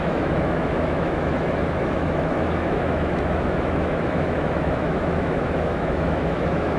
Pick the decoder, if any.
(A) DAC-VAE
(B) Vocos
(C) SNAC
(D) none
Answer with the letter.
A